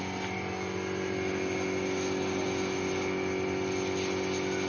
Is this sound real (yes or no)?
yes